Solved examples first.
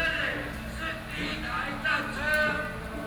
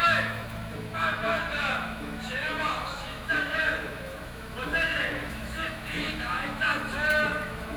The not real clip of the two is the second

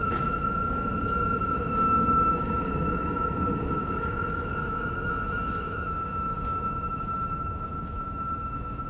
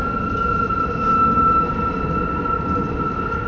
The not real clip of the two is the first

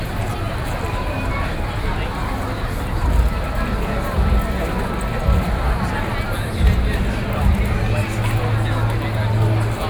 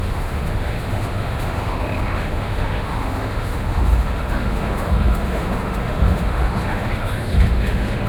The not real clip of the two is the second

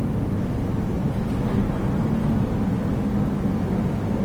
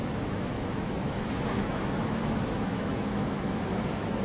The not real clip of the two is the second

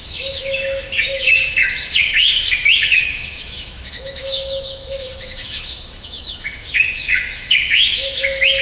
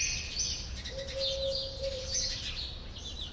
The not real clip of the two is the first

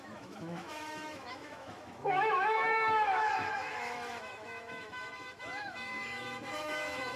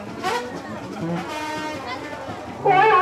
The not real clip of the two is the first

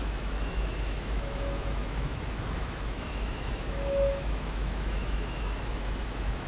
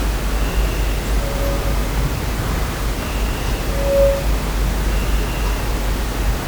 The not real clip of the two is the first